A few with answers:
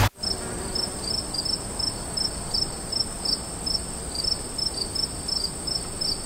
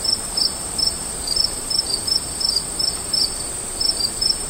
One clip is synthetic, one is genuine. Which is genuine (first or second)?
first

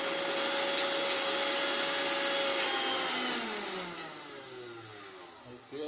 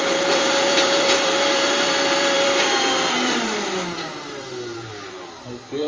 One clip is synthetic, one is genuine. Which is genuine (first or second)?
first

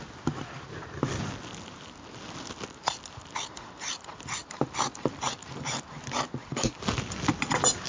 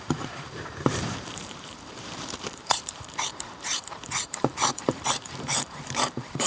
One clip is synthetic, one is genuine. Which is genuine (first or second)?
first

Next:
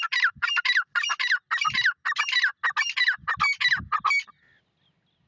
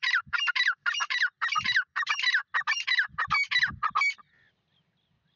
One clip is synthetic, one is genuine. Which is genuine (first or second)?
first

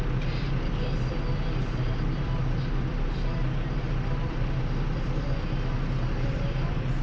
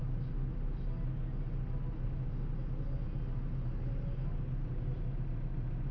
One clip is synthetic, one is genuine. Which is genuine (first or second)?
second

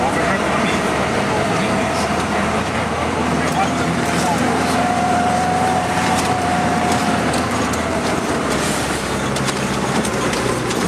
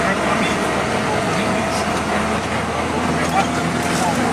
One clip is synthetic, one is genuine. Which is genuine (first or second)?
second